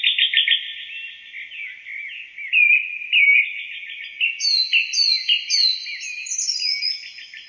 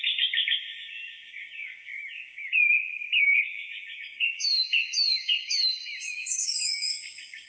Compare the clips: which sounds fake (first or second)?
second